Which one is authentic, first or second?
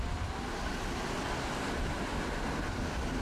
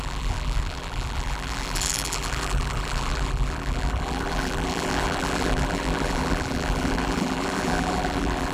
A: first